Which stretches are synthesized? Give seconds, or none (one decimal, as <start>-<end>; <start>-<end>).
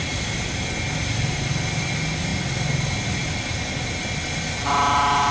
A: none